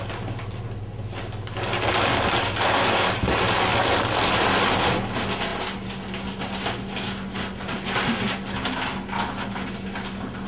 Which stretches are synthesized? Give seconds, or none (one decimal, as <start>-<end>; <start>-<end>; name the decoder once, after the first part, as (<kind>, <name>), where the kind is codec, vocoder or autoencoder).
none